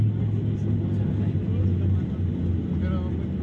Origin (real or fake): real